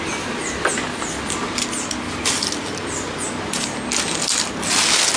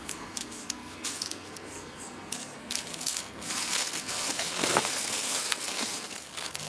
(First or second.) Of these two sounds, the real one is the first